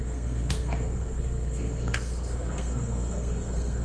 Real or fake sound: fake